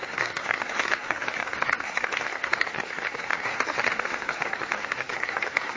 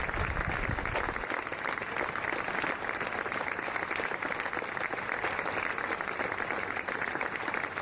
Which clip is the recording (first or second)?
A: second